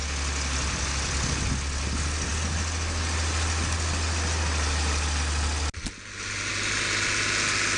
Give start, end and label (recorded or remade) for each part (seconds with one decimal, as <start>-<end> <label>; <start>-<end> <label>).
0.0-1.3 remade; 1.3-7.8 recorded